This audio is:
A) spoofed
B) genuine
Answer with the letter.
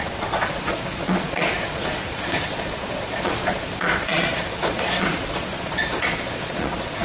A